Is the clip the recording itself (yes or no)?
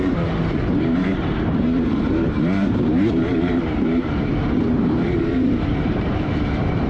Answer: no